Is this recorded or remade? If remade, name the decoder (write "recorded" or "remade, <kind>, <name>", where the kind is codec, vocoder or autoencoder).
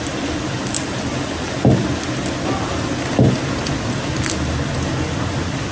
recorded